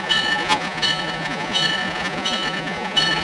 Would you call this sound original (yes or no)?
no